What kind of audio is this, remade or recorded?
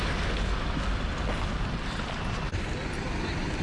recorded